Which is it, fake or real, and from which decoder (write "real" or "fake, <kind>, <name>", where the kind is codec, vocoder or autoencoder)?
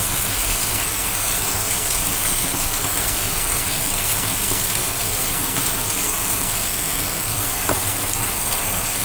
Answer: fake, codec, SNAC